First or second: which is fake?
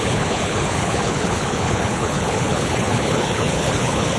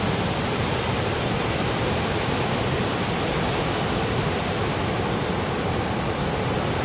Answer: first